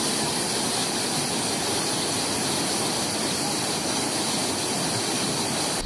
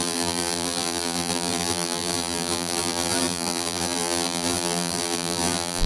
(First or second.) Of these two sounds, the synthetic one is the second